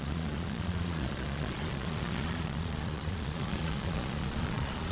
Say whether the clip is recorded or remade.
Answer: remade